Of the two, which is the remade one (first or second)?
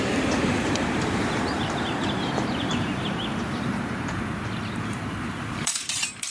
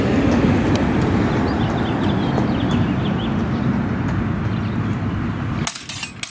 first